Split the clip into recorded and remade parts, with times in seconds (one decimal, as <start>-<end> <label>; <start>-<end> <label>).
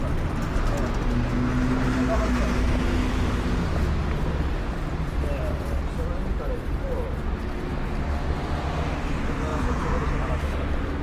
0.0-9.5 recorded; 9.5-10.1 remade; 10.1-11.0 recorded